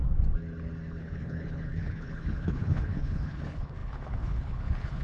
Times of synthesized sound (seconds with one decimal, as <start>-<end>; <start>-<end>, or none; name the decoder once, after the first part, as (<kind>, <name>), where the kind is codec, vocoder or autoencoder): 1.0-5.0 (codec, HILCodec)